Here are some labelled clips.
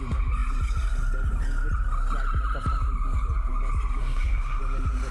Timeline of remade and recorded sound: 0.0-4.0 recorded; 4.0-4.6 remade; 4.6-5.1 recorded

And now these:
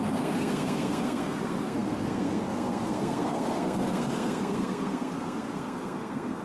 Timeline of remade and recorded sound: 0.0-6.4 remade

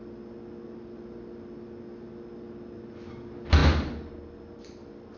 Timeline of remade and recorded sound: 0.0-5.2 recorded

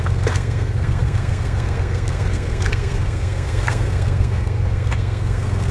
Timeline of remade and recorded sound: 0.0-5.7 remade

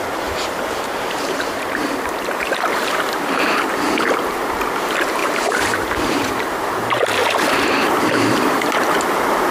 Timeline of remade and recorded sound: 0.0-7.2 remade; 7.2-8.3 recorded; 8.3-9.5 remade

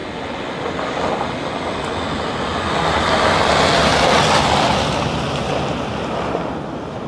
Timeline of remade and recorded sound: 0.0-7.1 recorded